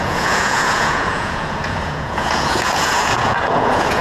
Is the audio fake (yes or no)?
yes